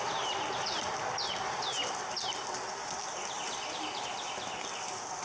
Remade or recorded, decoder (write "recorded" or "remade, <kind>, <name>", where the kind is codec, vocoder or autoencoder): recorded